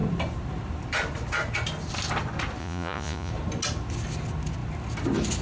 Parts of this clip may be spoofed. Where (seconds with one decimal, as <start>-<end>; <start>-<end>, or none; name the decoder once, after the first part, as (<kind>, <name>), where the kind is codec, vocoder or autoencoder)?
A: 2.6-3.3 (vocoder, Vocos)